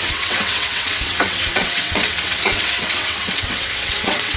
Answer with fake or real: fake